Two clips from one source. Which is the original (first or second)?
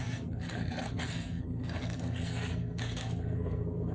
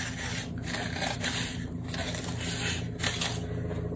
second